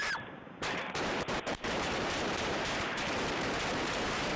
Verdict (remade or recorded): remade